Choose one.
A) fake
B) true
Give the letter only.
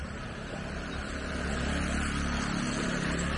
A